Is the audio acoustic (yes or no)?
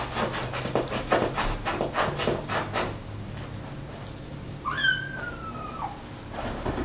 yes